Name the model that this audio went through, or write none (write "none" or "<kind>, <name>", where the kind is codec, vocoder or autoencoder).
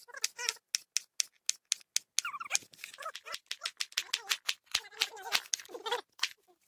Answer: none